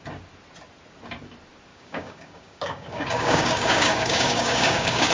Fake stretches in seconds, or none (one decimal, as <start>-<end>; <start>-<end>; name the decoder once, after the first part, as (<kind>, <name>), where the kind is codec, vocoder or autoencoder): 1.7-5.1 (codec, DAC)